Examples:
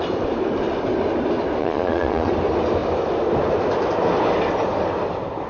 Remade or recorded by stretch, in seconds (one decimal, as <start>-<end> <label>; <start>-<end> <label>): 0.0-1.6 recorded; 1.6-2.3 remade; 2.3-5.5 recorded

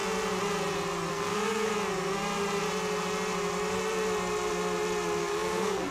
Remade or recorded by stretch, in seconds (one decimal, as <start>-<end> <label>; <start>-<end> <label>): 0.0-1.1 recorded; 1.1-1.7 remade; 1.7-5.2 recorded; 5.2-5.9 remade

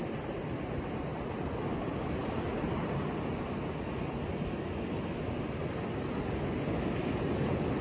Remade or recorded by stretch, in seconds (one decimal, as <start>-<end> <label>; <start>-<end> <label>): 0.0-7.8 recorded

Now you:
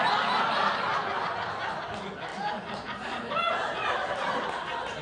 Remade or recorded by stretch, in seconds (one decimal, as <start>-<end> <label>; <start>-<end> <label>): 0.0-2.3 recorded; 2.3-3.3 remade; 3.3-5.0 recorded